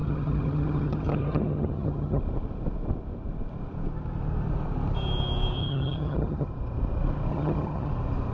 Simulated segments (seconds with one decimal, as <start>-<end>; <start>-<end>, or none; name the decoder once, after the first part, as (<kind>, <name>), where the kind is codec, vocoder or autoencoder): 0.0-2.2 (vocoder, HiFi-GAN); 5.6-6.5; 7.3-7.9